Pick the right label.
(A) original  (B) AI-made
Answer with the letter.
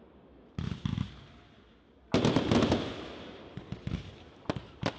A